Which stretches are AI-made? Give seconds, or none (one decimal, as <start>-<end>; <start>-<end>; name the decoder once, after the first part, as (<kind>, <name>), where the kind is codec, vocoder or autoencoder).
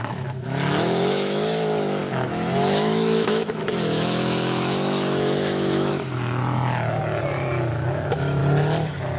0.0-6.4 (autoencoder, DAC-VAE); 7.7-8.4